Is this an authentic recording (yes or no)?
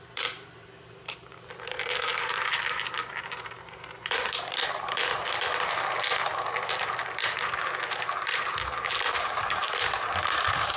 no